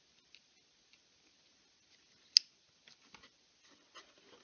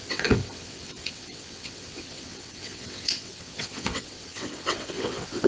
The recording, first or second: first